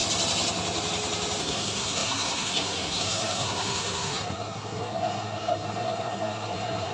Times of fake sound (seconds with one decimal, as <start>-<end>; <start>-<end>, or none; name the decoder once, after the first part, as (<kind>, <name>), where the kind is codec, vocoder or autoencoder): 1.4-6.9 (codec, SNAC)